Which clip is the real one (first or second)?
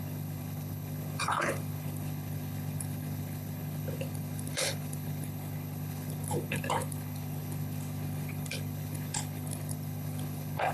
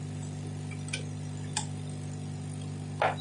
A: second